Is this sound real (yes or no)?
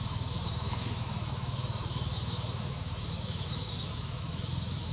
no